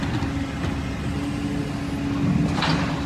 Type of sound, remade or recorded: recorded